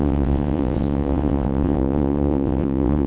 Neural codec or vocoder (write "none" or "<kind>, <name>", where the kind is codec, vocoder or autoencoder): vocoder, WaveNeXt